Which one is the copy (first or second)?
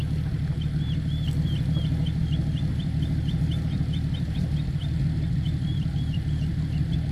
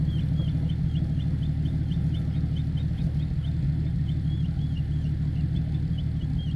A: first